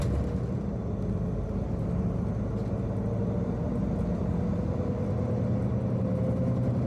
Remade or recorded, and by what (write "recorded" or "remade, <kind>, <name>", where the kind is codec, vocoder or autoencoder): recorded